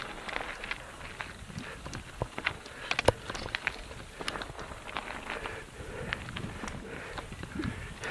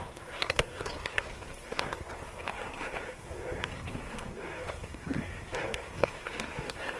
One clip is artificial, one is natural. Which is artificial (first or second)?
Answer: second